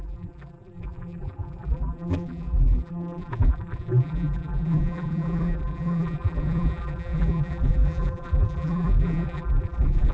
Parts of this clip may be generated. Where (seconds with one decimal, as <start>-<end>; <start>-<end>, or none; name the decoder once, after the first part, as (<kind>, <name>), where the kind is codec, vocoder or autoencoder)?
0.0-10.1 (vocoder, BigVGAN v2)